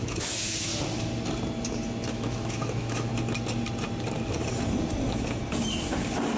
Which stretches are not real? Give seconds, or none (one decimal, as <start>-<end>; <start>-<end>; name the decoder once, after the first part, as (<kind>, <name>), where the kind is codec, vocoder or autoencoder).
0.0-0.7 (autoencoder, DAC-VAE); 2.1-3.1